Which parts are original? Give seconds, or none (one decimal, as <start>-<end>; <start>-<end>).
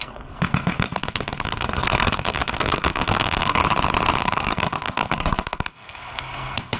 3.6-4.2